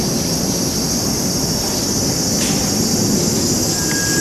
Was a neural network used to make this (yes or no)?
no